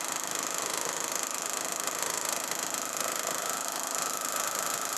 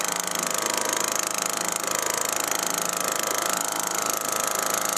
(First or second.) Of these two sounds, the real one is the second